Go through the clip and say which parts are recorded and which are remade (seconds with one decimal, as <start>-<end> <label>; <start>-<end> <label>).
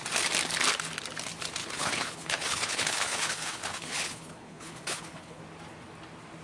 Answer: 0.0-1.6 recorded; 1.6-5.4 remade; 5.4-6.4 recorded